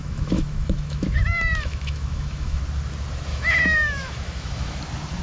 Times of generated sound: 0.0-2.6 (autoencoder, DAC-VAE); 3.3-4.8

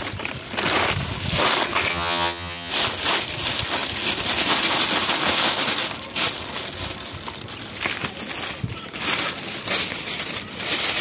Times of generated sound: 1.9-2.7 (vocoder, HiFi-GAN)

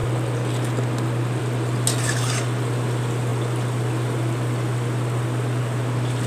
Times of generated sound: none